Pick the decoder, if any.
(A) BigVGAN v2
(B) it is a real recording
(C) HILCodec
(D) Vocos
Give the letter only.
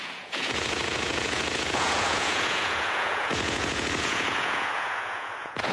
D